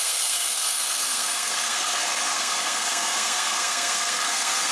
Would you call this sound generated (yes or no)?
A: yes